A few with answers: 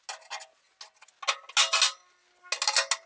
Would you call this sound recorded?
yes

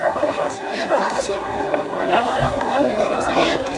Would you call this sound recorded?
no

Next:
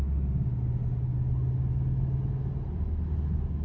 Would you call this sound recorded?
yes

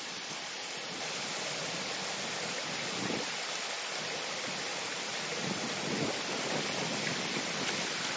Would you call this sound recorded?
yes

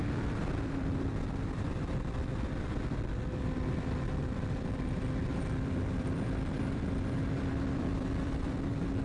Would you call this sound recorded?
no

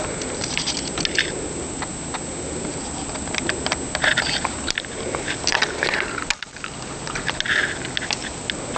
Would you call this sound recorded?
yes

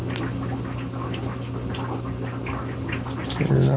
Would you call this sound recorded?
yes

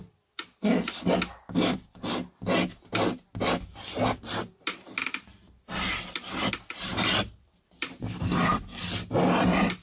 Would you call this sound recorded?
yes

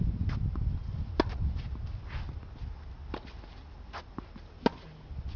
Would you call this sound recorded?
yes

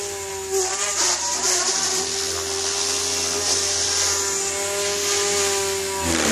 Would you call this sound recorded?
yes